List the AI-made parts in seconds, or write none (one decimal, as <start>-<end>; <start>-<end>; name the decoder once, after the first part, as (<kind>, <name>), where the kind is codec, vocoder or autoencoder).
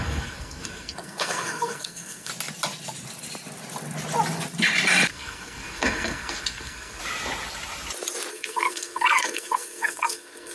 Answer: 0.0-2.3 (codec, SNAC); 5.1-7.0; 8.3-10.5